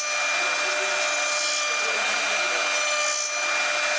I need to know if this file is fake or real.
real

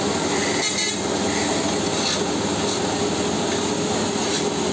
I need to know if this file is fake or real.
real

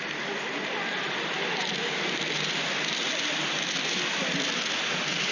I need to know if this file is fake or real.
real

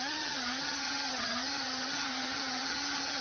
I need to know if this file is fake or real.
fake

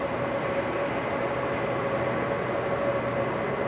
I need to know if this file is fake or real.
real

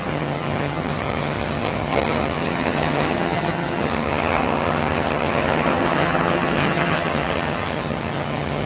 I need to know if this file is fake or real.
fake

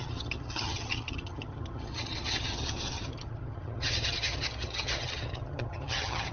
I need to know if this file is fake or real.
fake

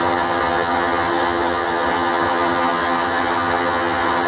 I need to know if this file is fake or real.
fake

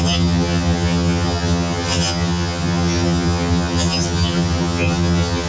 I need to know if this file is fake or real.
fake